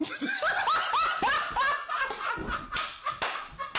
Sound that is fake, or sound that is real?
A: real